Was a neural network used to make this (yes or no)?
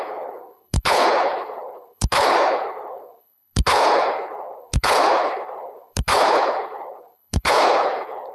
yes